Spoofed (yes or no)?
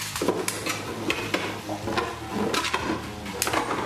no